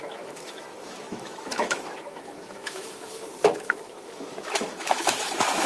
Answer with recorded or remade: remade